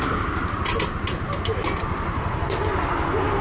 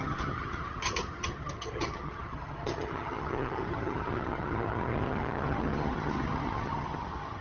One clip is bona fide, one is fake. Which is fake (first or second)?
second